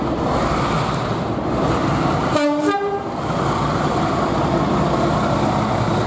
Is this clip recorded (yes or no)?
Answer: yes